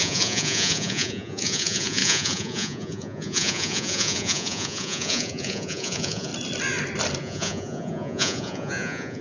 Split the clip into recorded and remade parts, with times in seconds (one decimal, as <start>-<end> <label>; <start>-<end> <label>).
0.0-6.3 remade; 6.3-7.2 recorded; 7.2-9.2 remade